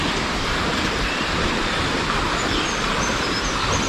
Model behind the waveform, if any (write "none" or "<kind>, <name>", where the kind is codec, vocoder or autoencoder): vocoder, BigVGAN v2